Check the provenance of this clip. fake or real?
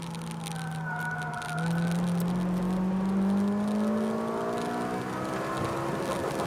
real